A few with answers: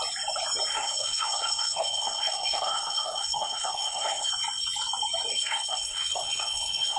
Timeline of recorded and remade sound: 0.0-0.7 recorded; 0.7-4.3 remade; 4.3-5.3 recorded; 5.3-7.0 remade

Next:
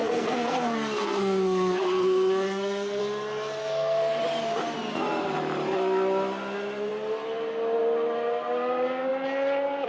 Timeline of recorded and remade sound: 0.0-3.0 remade; 3.0-3.6 recorded; 3.6-4.2 remade; 4.2-9.9 recorded

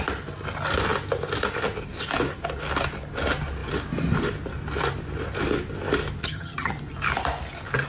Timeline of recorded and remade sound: 0.0-6.2 recorded; 6.2-6.7 remade; 6.7-7.9 recorded

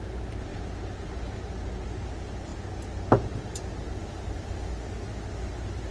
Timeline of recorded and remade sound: 0.0-0.5 recorded; 0.5-1.4 remade; 1.4-4.0 recorded; 4.0-4.7 remade; 4.7-5.9 recorded

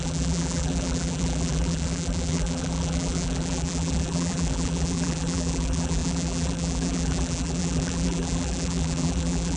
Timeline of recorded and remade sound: 0.0-9.6 remade